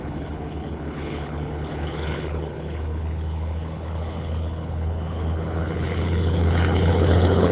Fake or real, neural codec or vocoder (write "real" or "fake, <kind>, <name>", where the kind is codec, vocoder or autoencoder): fake, codec, HILCodec